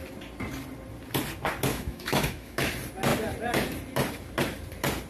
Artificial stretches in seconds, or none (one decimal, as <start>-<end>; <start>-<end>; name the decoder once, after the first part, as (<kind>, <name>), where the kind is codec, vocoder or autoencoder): 1.7-2.7 (autoencoder, DAC-VAE)